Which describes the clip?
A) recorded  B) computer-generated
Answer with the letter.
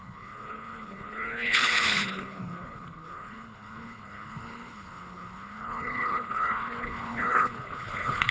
B